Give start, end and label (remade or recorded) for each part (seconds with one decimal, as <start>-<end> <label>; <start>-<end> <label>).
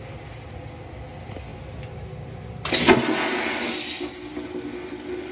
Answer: 0.0-5.3 recorded